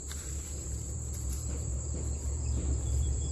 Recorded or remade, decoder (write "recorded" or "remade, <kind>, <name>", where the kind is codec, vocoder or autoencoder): remade, vocoder, BigVGAN v2